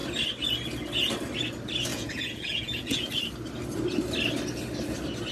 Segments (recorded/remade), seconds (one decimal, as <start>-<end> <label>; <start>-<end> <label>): 0.0-1.9 recorded; 1.9-3.1 remade; 3.1-5.3 recorded